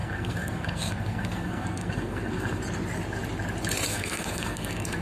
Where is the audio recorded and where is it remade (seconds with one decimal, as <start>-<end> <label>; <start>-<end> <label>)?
0.0-2.6 remade; 2.6-3.9 recorded; 3.9-5.0 remade

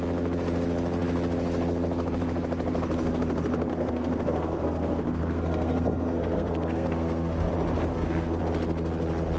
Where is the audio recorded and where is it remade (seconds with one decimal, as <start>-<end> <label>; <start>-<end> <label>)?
0.0-3.7 recorded; 3.7-7.5 remade; 7.5-7.9 recorded; 7.9-8.4 remade; 8.4-9.4 recorded

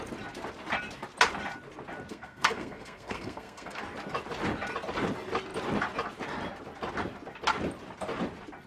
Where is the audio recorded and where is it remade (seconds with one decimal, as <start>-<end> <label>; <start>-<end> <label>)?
0.0-2.1 recorded; 2.1-3.8 remade; 3.8-8.7 recorded

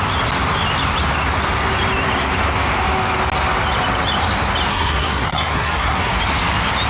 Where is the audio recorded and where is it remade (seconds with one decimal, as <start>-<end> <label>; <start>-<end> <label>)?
0.0-4.7 recorded; 4.7-6.1 remade; 6.1-6.9 recorded

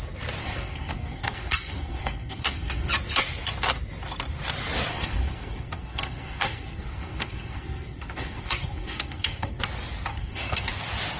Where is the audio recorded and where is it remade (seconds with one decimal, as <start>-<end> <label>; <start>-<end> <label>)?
0.0-0.4 recorded; 0.4-2.9 remade; 2.9-4.9 recorded; 4.9-9.6 remade; 9.6-10.1 recorded; 10.1-10.7 remade; 10.7-11.2 recorded